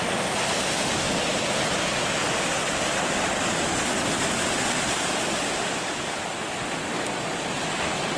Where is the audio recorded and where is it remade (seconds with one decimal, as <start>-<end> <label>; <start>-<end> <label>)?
0.0-8.2 recorded